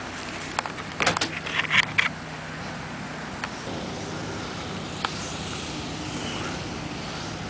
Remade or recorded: recorded